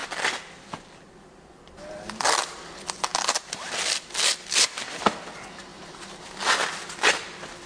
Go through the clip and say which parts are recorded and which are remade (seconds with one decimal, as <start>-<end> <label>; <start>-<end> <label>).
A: 0.0-7.7 recorded

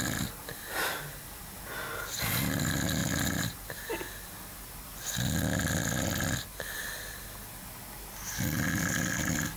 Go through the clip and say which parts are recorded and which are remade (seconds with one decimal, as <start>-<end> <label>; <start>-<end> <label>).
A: 0.0-9.6 recorded

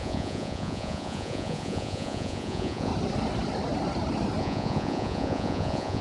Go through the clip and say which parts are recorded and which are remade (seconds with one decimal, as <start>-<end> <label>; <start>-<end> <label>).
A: 0.0-2.9 remade; 2.9-4.4 recorded; 4.4-6.0 remade

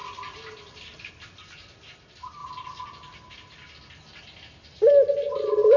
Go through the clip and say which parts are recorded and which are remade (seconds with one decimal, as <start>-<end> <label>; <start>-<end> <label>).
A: 0.0-5.8 recorded

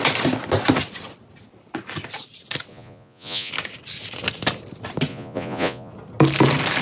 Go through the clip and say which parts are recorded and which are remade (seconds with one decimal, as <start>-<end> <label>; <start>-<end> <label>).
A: 0.0-2.7 recorded; 2.7-3.5 remade; 3.5-5.1 recorded; 5.1-5.9 remade; 5.9-6.8 recorded

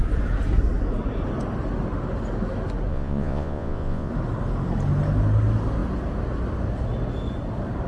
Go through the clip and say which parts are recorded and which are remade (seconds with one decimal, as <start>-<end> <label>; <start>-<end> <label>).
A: 0.0-2.9 recorded; 2.9-4.1 remade; 4.1-7.9 recorded

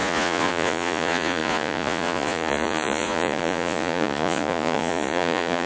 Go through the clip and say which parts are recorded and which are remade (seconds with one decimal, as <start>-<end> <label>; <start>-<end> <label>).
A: 0.0-5.7 remade